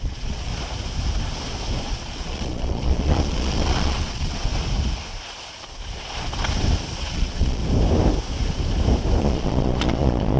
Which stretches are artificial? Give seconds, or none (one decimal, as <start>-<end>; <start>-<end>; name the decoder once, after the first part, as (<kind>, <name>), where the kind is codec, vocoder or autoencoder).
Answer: 0.0-0.5 (vocoder, Vocos); 1.8-4.5; 7.1-7.6; 9.2-10.4